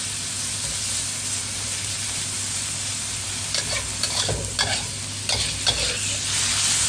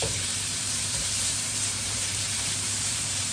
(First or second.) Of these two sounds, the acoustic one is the first